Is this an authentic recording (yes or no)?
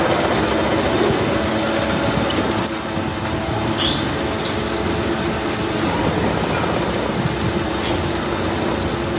yes